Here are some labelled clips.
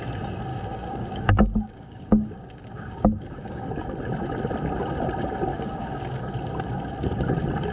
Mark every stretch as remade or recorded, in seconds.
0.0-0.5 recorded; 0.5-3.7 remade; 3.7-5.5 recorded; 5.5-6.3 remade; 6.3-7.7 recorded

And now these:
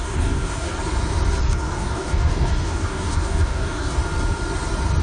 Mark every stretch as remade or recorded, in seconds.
0.0-0.8 remade; 0.8-1.4 recorded; 1.4-4.0 remade; 4.0-5.0 recorded

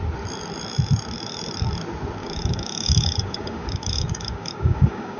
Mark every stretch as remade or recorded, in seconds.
0.0-2.2 recorded; 2.2-5.2 remade

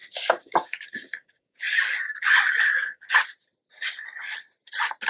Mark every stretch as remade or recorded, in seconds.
0.0-3.1 remade; 3.1-5.1 recorded

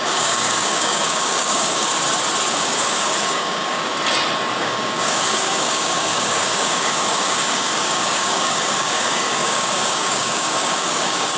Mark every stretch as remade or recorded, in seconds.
0.0-1.9 remade; 1.9-2.5 recorded; 2.5-3.9 remade; 3.9-4.6 recorded; 4.6-11.4 remade

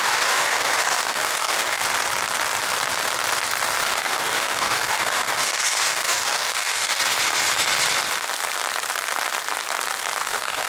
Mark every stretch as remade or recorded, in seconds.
0.0-1.8 remade; 1.8-3.8 recorded; 3.8-7.0 remade; 7.0-10.2 recorded; 10.2-10.7 remade

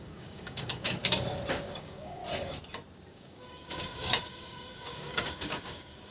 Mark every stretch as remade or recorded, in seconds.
0.0-1.0 remade; 1.0-1.7 recorded; 1.7-2.2 remade; 2.2-3.1 recorded; 3.1-6.1 remade